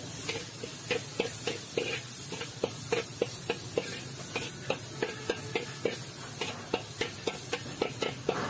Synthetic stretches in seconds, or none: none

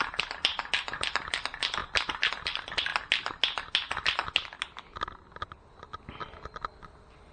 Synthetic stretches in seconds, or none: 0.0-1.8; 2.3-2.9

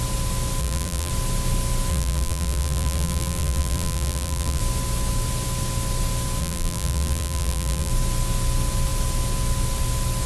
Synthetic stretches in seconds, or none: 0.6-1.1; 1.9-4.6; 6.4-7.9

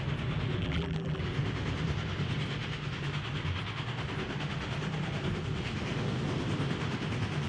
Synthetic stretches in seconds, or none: 0.6-1.2

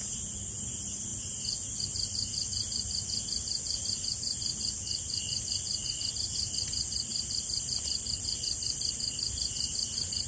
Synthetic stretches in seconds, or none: none

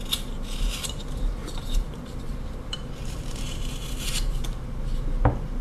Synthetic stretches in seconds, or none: 1.4-4.8